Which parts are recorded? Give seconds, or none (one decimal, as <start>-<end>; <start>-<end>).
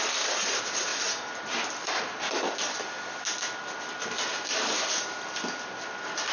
0.0-6.3